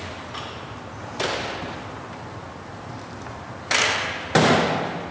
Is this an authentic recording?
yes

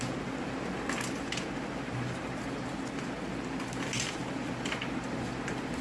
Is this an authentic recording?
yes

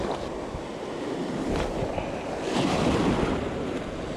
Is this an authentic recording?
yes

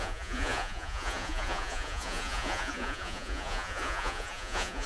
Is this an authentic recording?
no